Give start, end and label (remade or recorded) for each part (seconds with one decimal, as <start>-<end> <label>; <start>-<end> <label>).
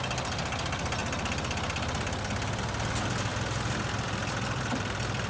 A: 0.0-5.3 recorded